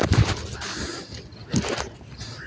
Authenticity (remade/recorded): recorded